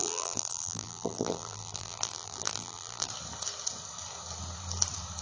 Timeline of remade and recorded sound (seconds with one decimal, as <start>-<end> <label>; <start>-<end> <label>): 0.0-3.1 remade; 3.1-5.2 recorded